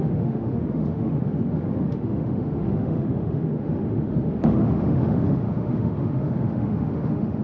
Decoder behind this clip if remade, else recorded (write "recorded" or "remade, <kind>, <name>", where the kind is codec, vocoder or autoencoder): remade, autoencoder, DAC-VAE